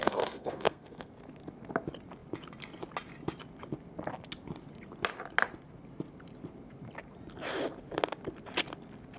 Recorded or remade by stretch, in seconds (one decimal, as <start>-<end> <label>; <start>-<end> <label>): 0.0-1.1 remade; 1.1-9.2 recorded